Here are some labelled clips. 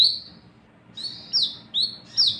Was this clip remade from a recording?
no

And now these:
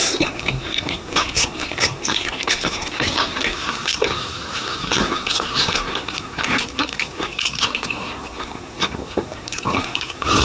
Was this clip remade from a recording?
yes